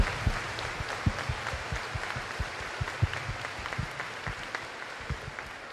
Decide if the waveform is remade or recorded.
recorded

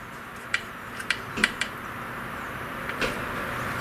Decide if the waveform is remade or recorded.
remade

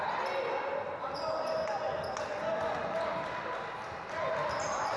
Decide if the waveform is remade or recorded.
recorded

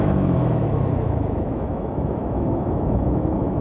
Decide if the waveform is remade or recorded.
remade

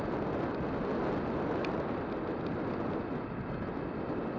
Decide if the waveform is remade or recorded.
recorded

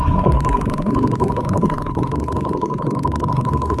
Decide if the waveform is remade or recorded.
remade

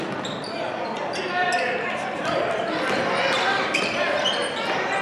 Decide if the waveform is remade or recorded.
remade